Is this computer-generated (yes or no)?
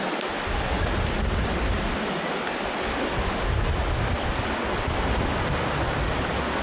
no